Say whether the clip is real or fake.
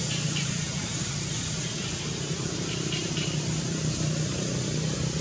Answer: fake